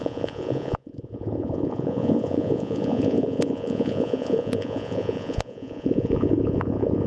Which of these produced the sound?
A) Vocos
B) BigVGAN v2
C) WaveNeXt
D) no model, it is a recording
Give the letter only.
A